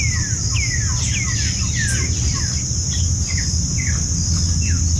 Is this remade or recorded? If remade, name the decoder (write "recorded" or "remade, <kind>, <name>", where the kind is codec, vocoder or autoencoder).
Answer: recorded